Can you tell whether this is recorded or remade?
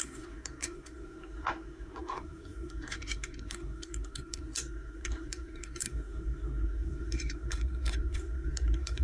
remade